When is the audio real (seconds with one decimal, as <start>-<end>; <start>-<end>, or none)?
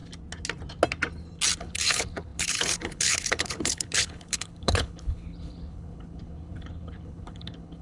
0.0-1.6